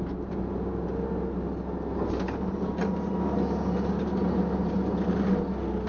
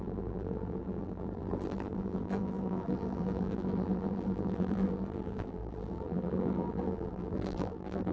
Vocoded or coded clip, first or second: second